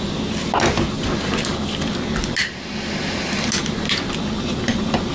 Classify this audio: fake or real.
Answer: real